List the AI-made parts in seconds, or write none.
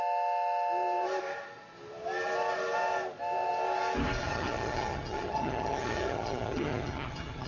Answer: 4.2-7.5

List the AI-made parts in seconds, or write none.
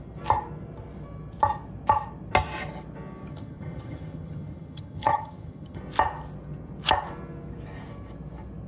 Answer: 3.3-5.8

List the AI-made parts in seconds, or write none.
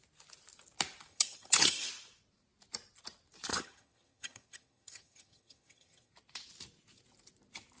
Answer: 1.1-1.9; 3.5-6.1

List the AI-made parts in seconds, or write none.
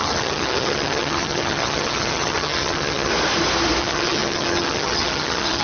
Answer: 0.0-3.1; 3.8-5.6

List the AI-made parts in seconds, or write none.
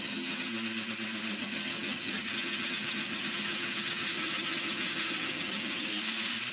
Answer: 0.0-0.5; 1.4-5.9